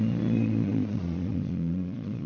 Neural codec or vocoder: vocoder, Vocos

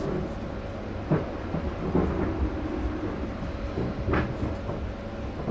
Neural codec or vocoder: none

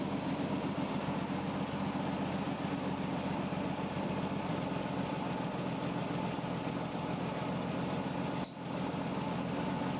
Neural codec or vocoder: none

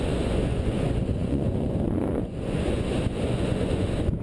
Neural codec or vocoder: vocoder, Vocos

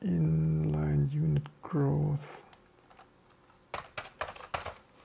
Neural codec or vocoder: none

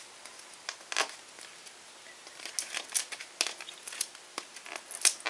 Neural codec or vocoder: none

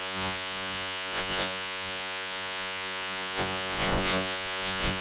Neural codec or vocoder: vocoder, Vocos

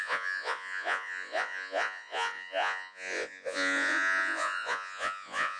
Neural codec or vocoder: vocoder, Vocos